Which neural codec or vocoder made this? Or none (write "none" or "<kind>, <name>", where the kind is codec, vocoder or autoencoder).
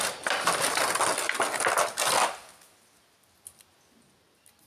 none